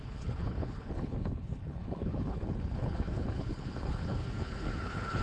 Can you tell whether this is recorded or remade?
remade